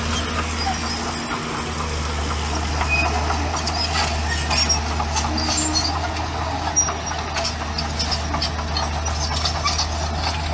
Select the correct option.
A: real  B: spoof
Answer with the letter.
A